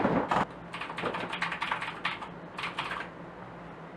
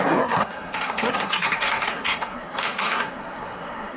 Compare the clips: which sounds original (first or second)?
first